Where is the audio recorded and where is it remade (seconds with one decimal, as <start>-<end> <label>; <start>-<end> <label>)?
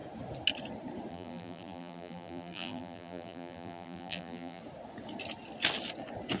0.0-1.1 recorded; 1.1-4.6 remade; 4.6-6.4 recorded